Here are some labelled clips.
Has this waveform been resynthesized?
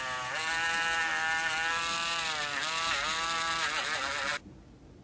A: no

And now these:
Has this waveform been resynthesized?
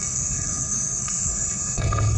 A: yes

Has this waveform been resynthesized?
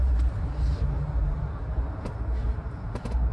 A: yes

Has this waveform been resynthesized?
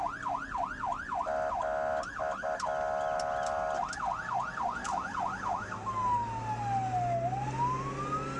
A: no